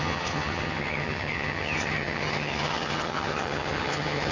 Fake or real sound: fake